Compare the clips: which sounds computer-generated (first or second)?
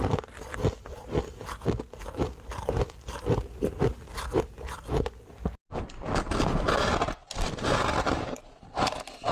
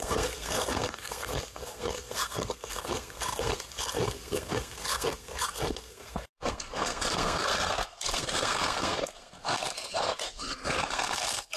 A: second